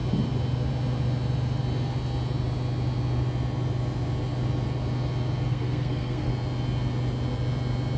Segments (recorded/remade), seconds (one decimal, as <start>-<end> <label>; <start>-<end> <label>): 0.0-5.5 recorded; 5.5-6.3 remade; 6.3-8.0 recorded